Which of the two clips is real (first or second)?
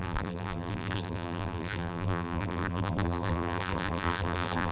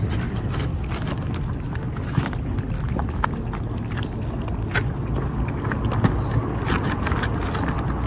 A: second